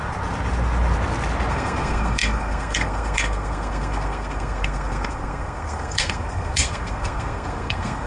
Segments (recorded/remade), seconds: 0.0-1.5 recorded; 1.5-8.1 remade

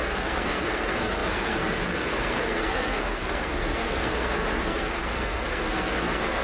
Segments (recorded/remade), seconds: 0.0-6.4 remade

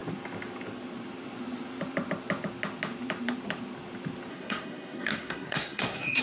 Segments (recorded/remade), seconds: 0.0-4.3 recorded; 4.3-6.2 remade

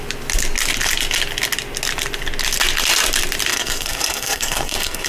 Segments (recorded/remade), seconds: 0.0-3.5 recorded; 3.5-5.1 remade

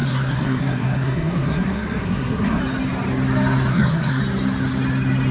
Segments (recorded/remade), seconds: 0.0-2.6 remade; 2.6-3.7 recorded; 3.7-4.2 remade; 4.2-5.3 recorded

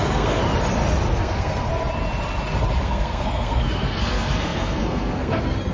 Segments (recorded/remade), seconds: 0.0-0.4 remade; 0.4-1.2 recorded; 1.2-1.7 remade; 1.7-2.8 recorded; 2.8-5.7 remade